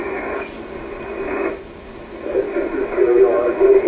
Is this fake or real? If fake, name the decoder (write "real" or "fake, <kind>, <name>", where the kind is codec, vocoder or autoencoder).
real